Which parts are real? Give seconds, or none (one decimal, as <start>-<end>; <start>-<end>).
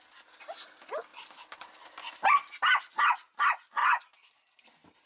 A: 0.0-5.1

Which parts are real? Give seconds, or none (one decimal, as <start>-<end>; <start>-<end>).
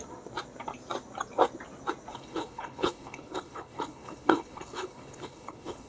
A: 0.0-2.1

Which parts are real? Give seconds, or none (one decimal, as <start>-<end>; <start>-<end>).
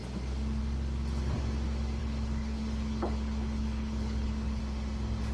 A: 0.0-2.0; 4.6-5.3